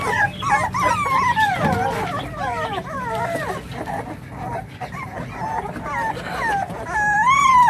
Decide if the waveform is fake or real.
real